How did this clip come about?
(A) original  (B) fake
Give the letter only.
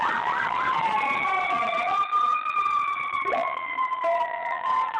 B